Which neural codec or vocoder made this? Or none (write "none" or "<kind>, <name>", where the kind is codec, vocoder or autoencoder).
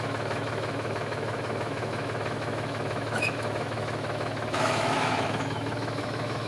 autoencoder, DAC-VAE